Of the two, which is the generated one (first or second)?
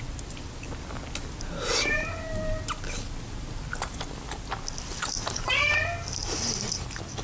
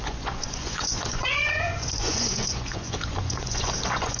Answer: second